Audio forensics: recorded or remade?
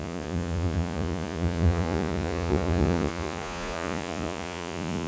remade